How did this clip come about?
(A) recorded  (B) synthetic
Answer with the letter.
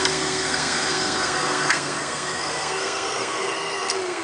B